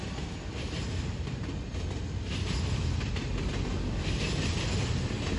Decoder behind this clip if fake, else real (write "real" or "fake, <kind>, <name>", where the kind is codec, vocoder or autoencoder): real